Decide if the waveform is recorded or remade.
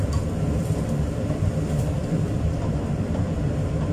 remade